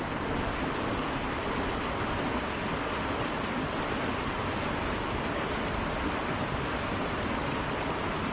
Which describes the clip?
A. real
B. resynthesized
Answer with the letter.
A